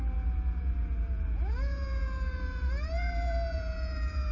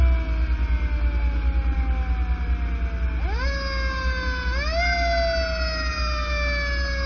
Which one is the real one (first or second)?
second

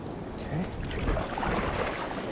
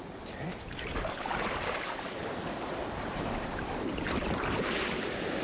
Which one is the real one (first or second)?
first